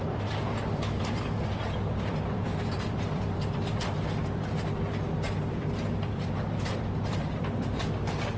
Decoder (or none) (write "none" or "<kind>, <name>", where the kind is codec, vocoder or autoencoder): vocoder, BigVGAN v2